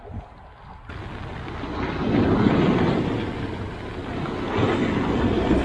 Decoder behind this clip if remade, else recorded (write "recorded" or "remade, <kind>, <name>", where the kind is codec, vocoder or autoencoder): recorded